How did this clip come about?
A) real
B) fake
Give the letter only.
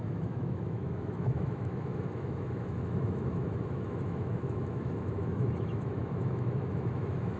B